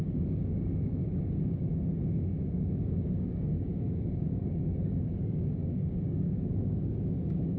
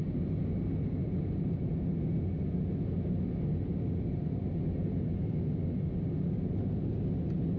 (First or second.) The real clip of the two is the second